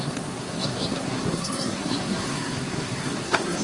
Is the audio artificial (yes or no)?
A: yes